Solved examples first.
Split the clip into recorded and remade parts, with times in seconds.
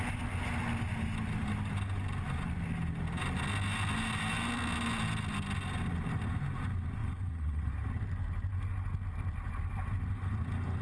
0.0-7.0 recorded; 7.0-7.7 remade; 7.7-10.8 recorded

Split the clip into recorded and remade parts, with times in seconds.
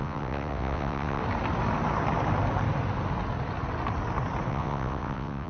0.0-1.2 remade; 1.2-4.5 recorded; 4.5-5.5 remade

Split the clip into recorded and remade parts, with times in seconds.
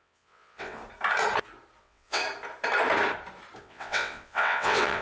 0.0-0.8 remade; 0.8-1.8 recorded; 1.8-2.2 remade; 2.2-3.6 recorded; 3.6-5.0 remade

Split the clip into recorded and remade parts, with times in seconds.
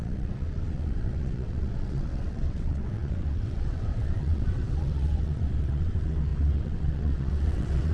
0.0-7.9 remade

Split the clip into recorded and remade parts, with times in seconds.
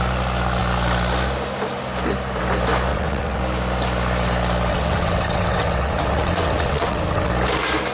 0.0-2.9 recorded; 2.9-3.4 remade; 3.4-4.7 recorded; 4.7-7.3 remade; 7.3-7.9 recorded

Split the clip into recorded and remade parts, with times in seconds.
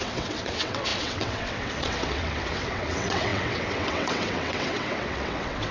0.0-5.7 remade